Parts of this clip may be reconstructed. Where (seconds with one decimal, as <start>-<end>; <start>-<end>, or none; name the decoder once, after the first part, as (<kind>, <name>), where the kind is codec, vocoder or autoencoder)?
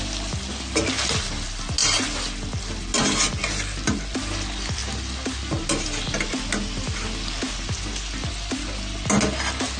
none